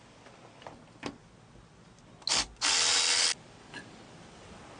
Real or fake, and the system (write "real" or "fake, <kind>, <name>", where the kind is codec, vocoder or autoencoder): real